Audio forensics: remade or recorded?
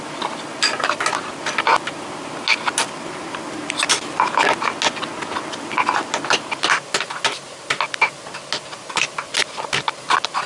recorded